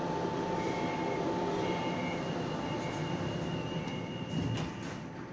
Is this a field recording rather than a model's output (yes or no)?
no